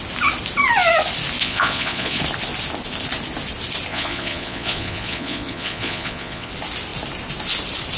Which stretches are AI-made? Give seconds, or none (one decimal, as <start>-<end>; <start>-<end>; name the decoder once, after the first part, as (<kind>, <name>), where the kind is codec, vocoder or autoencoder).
1.4-2.2 (vocoder, Vocos); 3.9-6.5